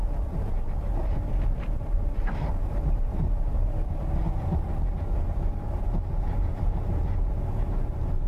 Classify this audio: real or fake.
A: fake